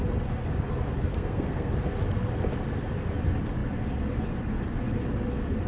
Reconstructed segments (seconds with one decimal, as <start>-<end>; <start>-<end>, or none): 1.1-1.7